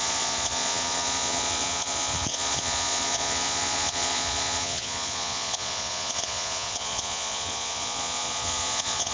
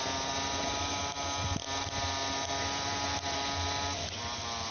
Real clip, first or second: second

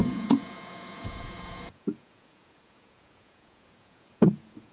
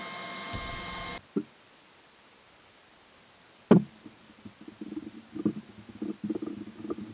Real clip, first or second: second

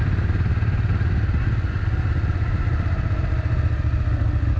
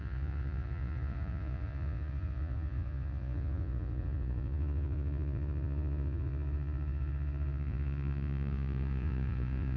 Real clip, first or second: first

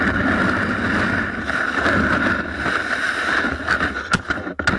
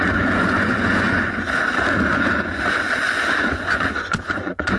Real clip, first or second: first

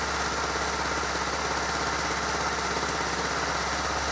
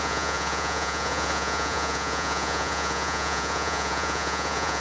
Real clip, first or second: first